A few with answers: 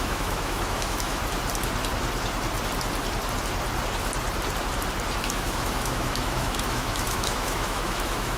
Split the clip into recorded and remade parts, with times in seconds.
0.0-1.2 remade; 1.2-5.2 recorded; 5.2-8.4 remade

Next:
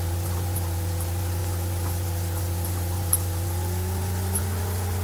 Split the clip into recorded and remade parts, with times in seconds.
0.0-5.0 recorded

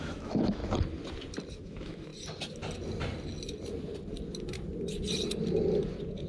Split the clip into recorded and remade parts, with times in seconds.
0.0-0.6 remade; 0.6-1.6 recorded; 1.6-2.1 remade; 2.1-6.3 recorded

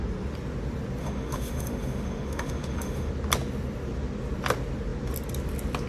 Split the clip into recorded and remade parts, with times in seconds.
0.0-1.0 recorded; 1.0-3.1 remade; 3.1-5.9 recorded

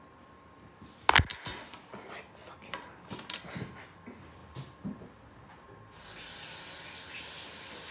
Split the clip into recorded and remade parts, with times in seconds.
0.0-7.9 recorded